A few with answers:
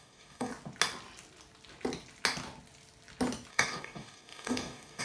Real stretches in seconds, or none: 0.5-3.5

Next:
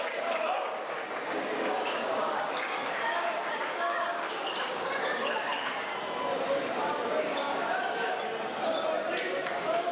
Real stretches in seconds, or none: 5.9-7.2; 8.1-9.5